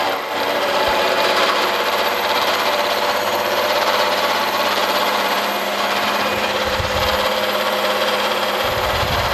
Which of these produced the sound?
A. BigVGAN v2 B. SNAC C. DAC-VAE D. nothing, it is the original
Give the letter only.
A